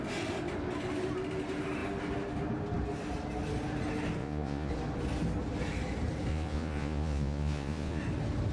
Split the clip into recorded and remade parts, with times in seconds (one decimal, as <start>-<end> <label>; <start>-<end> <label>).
0.0-4.2 recorded; 4.2-4.7 remade; 4.7-6.3 recorded; 6.3-8.0 remade; 8.0-8.5 recorded